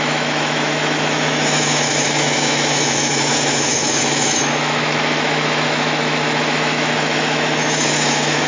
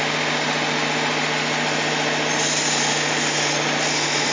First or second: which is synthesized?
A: first